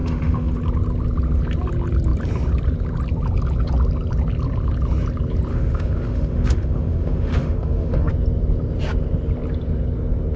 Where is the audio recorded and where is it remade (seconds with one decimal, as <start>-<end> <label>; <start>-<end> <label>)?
0.0-0.6 remade; 0.6-5.5 recorded; 5.5-8.1 remade; 8.1-10.4 recorded